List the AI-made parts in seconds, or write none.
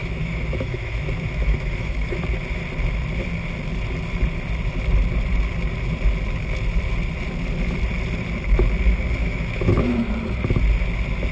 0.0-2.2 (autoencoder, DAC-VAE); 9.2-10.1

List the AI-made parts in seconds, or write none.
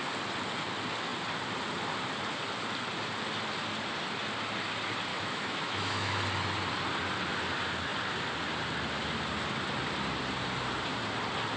5.1-6.2 (autoencoder, DAC-VAE)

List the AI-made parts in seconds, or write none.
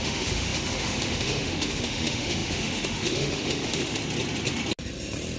0.0-4.0 (autoencoder, DAC-VAE)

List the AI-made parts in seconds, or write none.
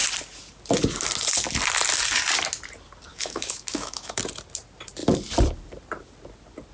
3.1-4.2 (autoencoder, DAC-VAE)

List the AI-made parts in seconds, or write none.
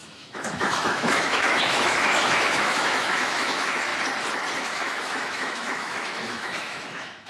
0.0-3.9 (autoencoder, DAC-VAE); 4.6-7.3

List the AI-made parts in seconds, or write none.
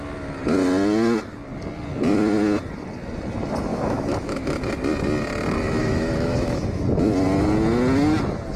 3.7-4.7 (autoencoder, DAC-VAE); 5.8-6.8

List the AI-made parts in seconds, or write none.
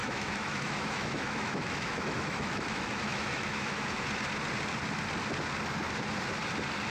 0.0-4.1 (autoencoder, DAC-VAE)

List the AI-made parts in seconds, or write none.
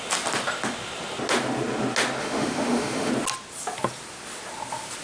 2.2-3.1 (autoencoder, DAC-VAE)